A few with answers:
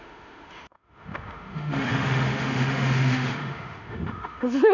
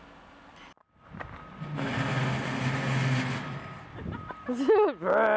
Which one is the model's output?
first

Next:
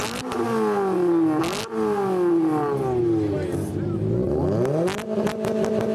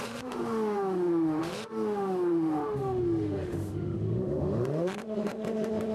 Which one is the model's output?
second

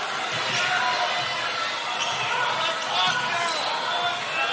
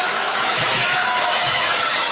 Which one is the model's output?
second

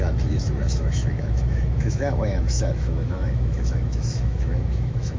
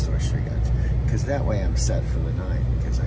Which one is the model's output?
first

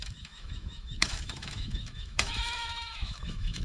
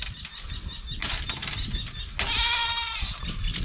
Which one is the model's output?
first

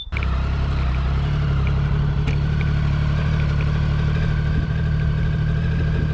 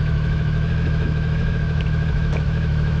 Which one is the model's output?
second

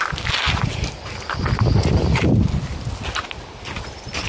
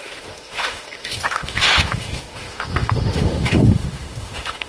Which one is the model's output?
second